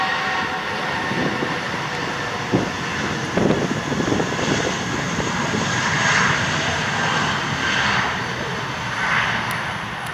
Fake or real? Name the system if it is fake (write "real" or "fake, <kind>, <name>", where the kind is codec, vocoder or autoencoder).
real